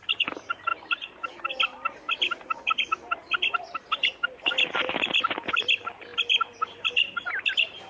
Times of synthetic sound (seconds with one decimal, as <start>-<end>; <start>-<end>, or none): 0.7-1.4